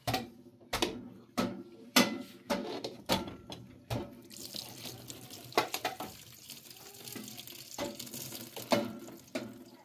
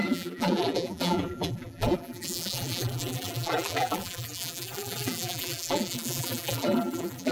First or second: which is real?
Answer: first